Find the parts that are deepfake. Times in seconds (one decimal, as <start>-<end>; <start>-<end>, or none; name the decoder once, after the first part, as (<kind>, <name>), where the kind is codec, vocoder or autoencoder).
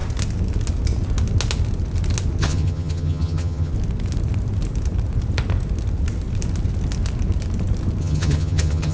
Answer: 2.4-3.7 (vocoder, HiFi-GAN); 8.0-8.9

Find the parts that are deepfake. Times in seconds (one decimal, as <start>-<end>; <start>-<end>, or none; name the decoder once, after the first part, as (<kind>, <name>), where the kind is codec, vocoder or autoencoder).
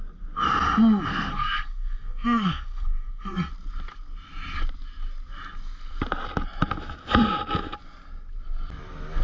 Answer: 1.1-3.5 (codec, SNAC)